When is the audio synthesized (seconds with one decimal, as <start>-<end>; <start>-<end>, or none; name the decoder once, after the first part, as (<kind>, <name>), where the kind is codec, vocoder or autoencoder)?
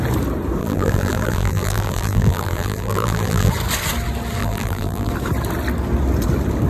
0.6-3.5 (vocoder, BigVGAN v2); 4.4-5.1